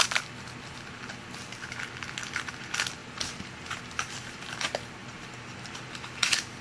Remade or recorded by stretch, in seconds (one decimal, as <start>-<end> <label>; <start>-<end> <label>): 0.0-3.0 recorded; 3.0-3.8 remade; 3.8-5.0 recorded; 5.0-6.6 remade